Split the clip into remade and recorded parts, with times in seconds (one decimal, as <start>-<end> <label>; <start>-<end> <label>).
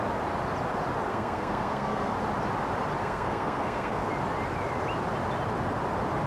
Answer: 0.0-1.1 recorded; 1.1-2.1 remade; 2.1-3.0 recorded; 3.0-4.1 remade; 4.1-6.3 recorded